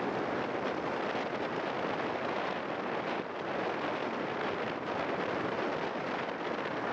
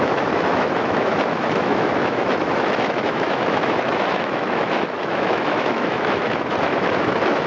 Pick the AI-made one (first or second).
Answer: second